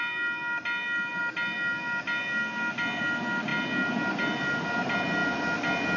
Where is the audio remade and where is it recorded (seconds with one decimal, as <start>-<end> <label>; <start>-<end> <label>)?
0.0-6.0 recorded